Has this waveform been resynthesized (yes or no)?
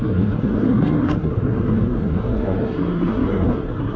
yes